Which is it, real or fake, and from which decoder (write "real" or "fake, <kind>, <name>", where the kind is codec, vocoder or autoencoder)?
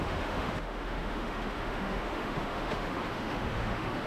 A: fake, autoencoder, DAC-VAE